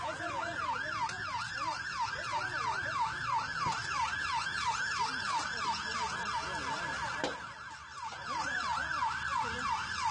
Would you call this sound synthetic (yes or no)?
no